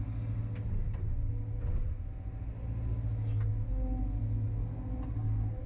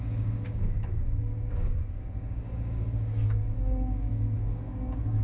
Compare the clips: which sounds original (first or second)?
first